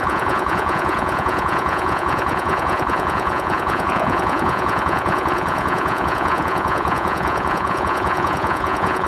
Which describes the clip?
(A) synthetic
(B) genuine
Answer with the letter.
A